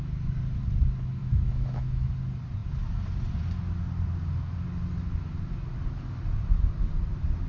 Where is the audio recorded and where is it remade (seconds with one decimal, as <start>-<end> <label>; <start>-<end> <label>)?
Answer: 0.0-1.2 recorded; 1.2-2.1 remade; 2.1-7.5 recorded